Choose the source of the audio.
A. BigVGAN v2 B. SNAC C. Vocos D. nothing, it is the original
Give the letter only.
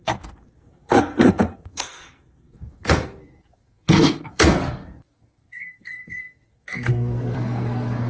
B